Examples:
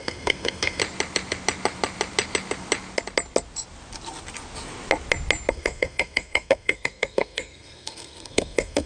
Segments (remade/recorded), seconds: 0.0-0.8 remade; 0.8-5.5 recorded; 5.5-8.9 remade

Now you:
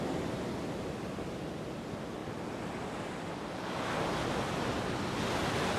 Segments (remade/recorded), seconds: 0.0-5.8 recorded

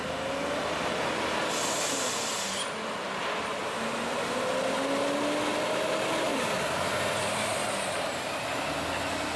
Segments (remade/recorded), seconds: 0.0-6.3 recorded; 6.3-6.9 remade; 6.9-9.4 recorded

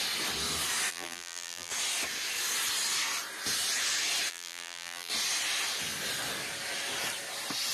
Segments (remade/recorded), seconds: 0.0-0.9 recorded; 0.9-1.7 remade; 1.7-4.3 recorded; 4.3-5.1 remade; 5.1-7.7 recorded